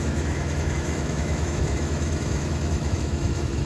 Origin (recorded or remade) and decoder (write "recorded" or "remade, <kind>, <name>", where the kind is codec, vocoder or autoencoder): remade, autoencoder, DAC-VAE